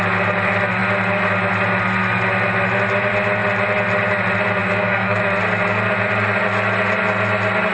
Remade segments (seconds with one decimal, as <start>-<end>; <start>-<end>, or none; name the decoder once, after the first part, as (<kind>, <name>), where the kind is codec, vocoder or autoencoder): 4.6-5.2 (codec, DAC)